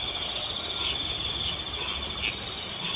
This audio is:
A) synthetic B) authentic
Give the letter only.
B